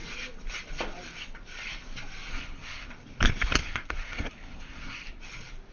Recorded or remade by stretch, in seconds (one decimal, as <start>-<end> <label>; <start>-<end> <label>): 0.0-2.3 recorded; 2.3-2.9 remade; 2.9-3.6 recorded; 3.6-5.2 remade; 5.2-5.7 recorded